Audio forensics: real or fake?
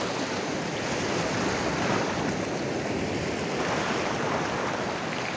real